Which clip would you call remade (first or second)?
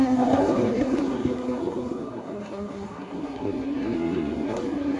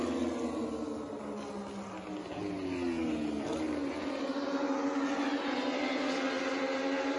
first